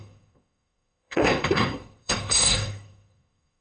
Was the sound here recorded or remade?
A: remade